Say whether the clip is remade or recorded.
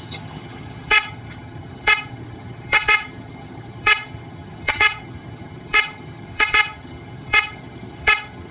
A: remade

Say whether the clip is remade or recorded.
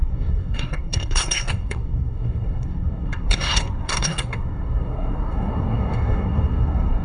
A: remade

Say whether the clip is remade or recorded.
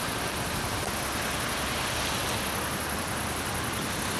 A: recorded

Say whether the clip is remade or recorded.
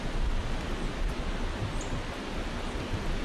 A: recorded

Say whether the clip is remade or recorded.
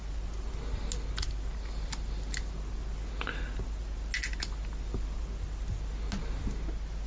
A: recorded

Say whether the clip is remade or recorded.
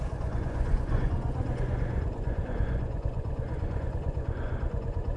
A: remade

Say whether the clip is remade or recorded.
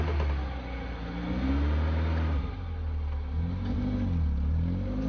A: recorded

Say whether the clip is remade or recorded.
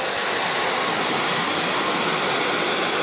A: recorded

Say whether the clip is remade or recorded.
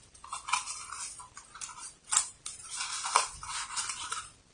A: recorded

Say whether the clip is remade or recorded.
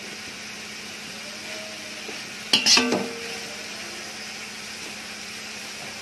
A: recorded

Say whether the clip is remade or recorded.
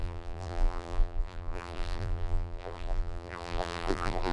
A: remade